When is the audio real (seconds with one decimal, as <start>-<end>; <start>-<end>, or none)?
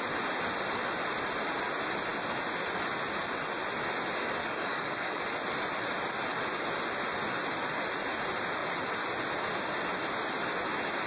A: 0.0-4.4; 5.2-11.1